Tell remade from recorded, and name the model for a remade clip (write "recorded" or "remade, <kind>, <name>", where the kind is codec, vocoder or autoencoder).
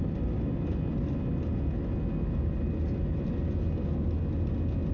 recorded